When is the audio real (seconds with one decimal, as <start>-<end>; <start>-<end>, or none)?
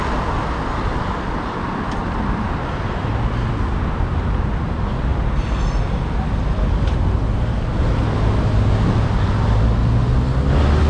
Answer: 0.0-10.9